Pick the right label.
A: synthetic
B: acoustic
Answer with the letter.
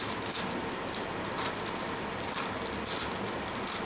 B